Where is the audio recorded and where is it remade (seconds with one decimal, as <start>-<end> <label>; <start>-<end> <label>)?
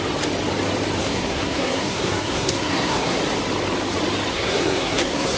0.0-1.0 recorded; 1.0-3.2 remade; 3.2-4.3 recorded; 4.3-5.4 remade